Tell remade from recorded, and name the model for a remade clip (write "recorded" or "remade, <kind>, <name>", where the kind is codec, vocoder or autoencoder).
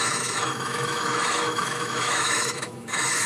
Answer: remade, autoencoder, DAC-VAE